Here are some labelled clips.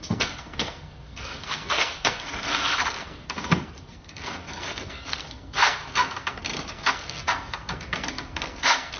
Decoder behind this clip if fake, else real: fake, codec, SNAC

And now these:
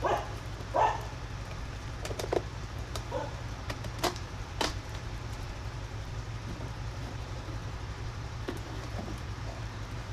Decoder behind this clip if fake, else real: fake, vocoder, BigVGAN v2